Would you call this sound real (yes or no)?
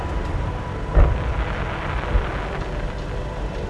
yes